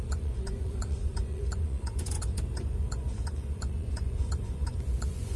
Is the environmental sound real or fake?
fake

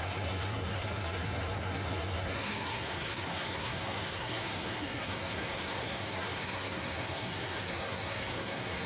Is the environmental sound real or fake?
fake